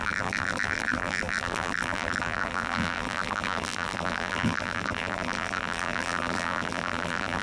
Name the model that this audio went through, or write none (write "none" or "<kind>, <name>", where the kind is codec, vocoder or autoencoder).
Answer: vocoder, BigVGAN v2